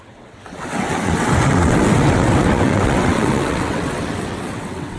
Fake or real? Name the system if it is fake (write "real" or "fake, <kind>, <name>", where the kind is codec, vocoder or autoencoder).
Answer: fake, vocoder, WaveNeXt